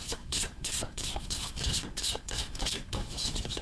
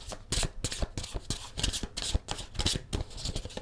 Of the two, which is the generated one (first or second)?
first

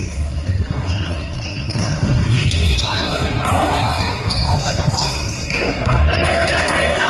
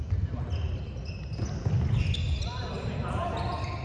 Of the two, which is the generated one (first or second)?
first